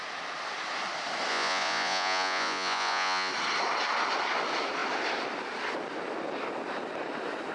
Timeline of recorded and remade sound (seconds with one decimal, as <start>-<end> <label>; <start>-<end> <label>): 0.0-1.3 recorded; 1.3-3.3 remade; 3.3-7.5 recorded